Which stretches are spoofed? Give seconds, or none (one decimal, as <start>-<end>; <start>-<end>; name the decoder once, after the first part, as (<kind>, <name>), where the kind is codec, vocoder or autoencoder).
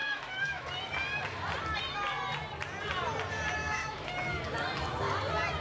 0.0-0.8 (autoencoder, DAC-VAE); 3.6-4.1